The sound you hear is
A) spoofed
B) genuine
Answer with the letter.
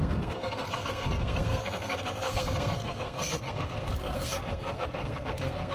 A